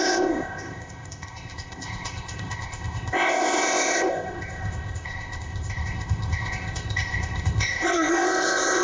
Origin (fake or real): fake